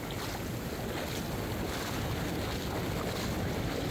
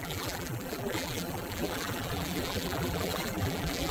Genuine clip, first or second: first